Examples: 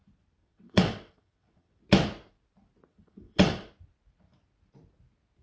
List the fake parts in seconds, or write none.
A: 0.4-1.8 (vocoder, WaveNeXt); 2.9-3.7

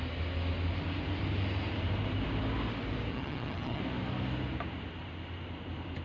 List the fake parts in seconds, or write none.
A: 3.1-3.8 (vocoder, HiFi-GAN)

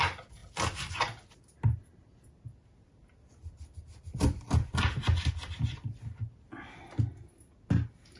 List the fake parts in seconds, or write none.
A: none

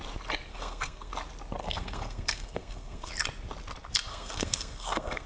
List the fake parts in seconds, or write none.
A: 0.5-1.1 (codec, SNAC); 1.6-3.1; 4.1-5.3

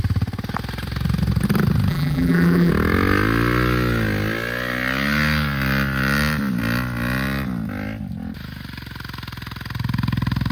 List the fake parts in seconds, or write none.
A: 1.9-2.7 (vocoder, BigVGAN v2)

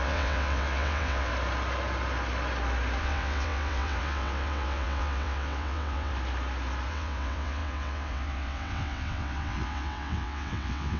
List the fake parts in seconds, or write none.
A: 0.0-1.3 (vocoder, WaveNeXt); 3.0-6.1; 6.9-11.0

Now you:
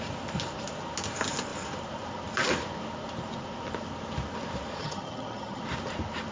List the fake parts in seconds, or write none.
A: 4.8-5.6 (vocoder, HiFi-GAN)